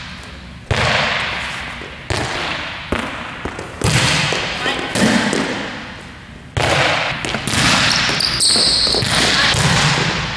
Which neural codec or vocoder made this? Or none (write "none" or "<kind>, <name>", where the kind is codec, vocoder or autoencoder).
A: none